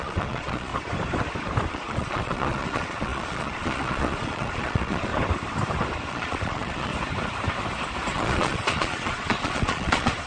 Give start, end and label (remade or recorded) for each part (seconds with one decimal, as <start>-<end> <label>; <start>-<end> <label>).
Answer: 0.0-0.7 remade; 0.7-1.7 recorded; 1.7-5.1 remade; 5.1-6.1 recorded; 6.1-6.9 remade; 6.9-8.1 recorded; 8.1-10.3 remade